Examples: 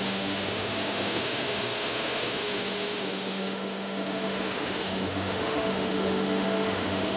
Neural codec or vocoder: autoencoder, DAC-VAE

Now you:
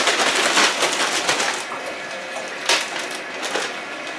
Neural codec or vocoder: none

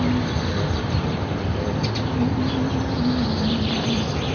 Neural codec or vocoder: none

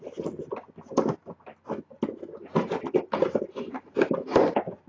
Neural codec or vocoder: none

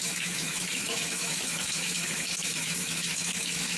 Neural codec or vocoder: autoencoder, DAC-VAE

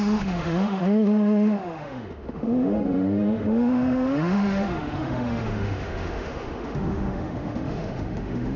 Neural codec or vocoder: autoencoder, DAC-VAE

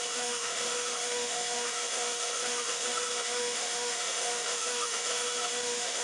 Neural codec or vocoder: autoencoder, DAC-VAE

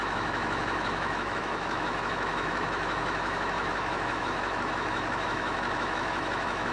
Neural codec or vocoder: autoencoder, DAC-VAE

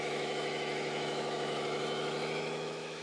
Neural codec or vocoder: autoencoder, DAC-VAE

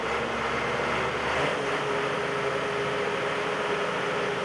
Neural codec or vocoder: none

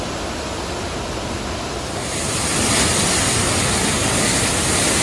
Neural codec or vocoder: none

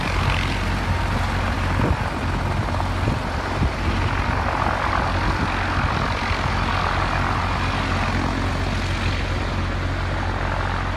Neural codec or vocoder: none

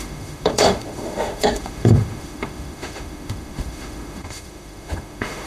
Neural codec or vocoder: autoencoder, DAC-VAE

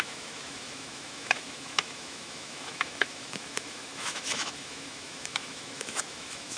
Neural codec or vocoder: autoencoder, DAC-VAE